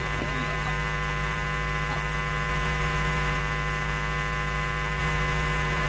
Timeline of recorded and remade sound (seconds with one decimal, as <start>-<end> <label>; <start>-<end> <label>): 0.0-2.5 recorded; 2.5-3.4 remade; 3.4-5.0 recorded; 5.0-5.9 remade